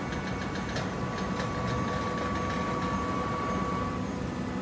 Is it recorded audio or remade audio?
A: recorded